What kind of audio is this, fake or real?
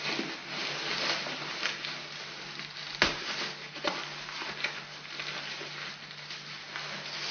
real